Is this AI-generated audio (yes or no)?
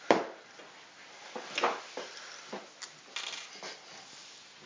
no